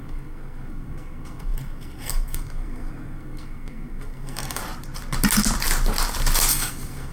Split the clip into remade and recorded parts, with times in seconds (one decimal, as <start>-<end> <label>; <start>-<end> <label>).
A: 0.0-4.6 remade; 4.6-6.5 recorded; 6.5-7.1 remade